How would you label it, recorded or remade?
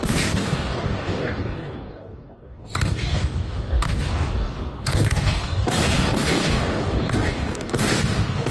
remade